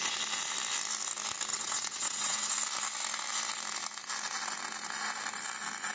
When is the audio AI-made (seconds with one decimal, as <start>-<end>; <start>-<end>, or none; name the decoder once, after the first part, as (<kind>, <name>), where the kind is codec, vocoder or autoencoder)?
1.5-2.5 (vocoder, WaveNeXt)